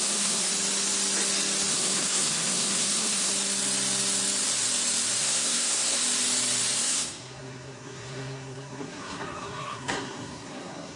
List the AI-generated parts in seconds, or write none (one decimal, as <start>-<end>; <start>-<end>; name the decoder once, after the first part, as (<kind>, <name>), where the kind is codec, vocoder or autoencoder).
0.0-0.5 (codec, SNAC); 1.7-3.3; 5.2-6.0; 6.8-11.0